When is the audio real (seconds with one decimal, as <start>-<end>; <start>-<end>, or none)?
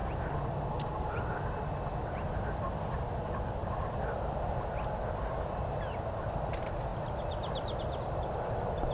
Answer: 0.0-8.9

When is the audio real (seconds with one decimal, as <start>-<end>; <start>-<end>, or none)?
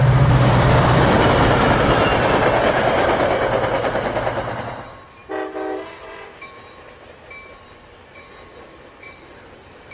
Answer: 2.1-4.6; 5.2-5.9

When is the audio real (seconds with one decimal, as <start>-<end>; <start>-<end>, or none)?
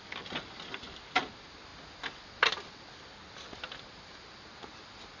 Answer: 0.0-5.2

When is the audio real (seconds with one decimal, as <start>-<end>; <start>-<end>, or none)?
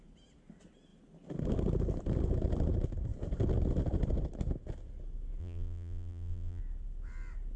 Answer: 0.0-5.4; 6.6-7.6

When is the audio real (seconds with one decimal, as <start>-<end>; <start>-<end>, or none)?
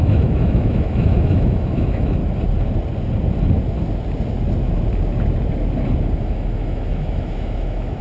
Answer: 2.2-6.2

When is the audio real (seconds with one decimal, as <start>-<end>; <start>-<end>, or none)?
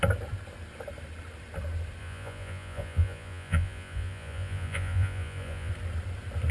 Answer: 0.0-2.0; 5.7-6.5